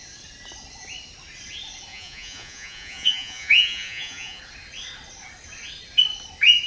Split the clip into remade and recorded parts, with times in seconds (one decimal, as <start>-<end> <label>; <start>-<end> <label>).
0.0-1.9 recorded; 1.9-4.4 remade; 4.4-6.7 recorded